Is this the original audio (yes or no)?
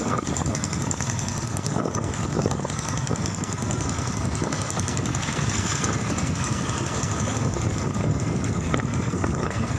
no